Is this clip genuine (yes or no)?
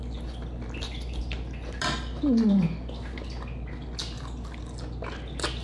yes